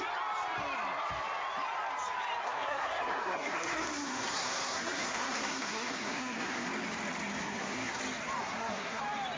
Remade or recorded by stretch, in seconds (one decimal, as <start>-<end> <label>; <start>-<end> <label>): 0.0-2.4 recorded; 2.4-6.7 remade; 6.7-7.4 recorded; 7.4-8.0 remade; 8.0-8.4 recorded; 8.4-9.0 remade; 9.0-9.4 recorded